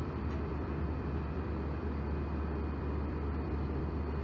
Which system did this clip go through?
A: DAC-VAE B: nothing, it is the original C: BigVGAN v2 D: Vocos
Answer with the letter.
C